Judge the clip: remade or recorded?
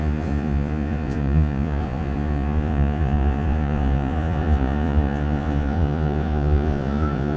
remade